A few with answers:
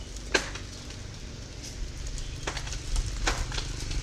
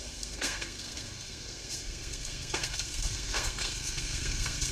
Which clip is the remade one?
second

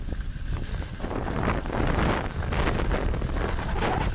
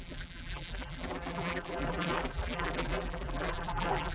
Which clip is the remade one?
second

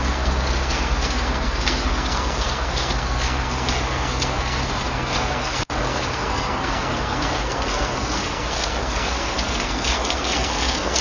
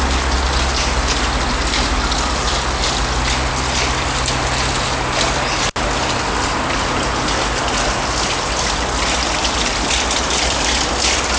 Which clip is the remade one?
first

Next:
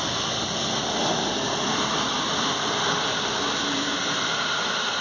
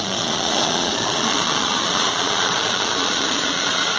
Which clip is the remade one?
second